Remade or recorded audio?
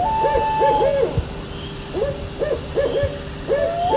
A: recorded